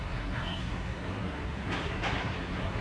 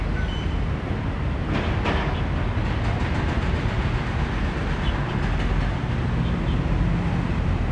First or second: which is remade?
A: first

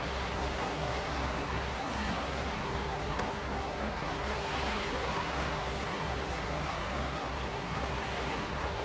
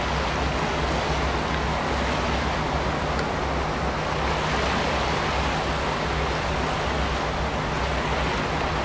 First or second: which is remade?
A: first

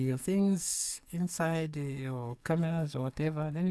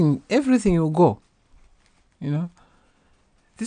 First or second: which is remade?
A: first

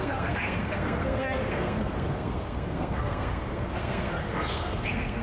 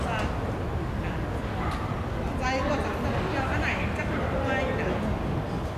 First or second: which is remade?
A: first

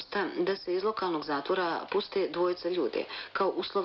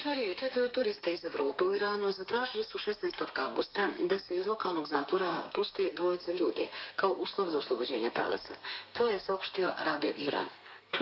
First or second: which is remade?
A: second